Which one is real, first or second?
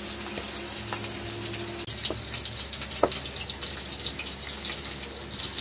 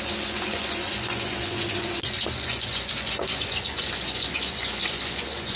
first